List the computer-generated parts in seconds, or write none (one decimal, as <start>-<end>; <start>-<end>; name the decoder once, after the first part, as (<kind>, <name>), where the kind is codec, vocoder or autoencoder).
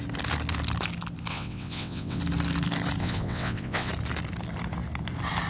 1.3-2.2 (vocoder, WaveNeXt); 3.0-3.9